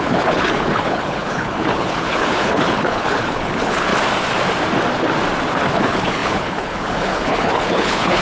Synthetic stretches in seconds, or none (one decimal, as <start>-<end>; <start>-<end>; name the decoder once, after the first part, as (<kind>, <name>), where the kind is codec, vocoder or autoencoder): 0.0-3.9 (codec, HILCodec); 5.8-8.2